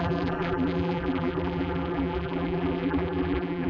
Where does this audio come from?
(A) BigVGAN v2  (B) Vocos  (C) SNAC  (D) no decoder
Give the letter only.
A